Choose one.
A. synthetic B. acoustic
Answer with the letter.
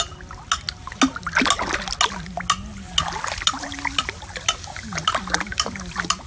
B